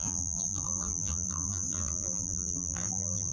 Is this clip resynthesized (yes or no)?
yes